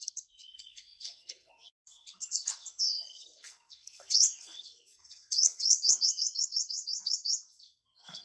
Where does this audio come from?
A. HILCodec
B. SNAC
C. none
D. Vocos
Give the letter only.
B